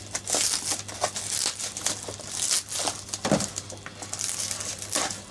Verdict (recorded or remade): recorded